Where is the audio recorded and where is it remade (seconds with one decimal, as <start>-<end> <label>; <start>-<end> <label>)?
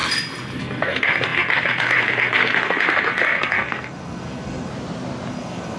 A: 0.0-0.6 recorded; 0.6-4.7 remade; 4.7-5.3 recorded; 5.3-5.8 remade